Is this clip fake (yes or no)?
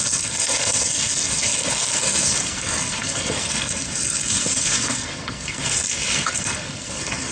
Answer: yes